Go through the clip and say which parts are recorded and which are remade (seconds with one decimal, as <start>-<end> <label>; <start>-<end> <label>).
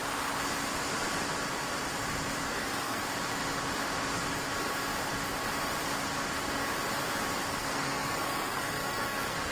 0.0-2.5 recorded; 2.5-3.0 remade; 3.0-7.5 recorded; 7.5-9.5 remade